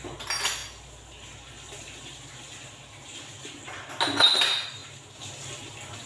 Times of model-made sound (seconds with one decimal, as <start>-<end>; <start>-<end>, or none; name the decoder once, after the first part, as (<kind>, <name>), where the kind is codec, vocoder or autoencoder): none